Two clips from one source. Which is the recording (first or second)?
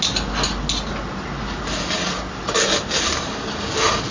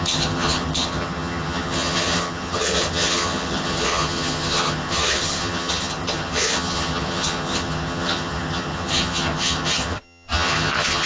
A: first